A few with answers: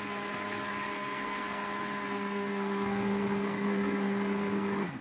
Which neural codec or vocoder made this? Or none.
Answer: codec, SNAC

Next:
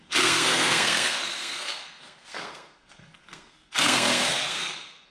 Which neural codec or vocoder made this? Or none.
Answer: codec, SNAC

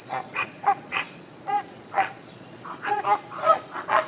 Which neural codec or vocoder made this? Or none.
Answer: vocoder, Vocos